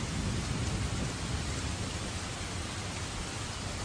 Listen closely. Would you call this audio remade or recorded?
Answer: recorded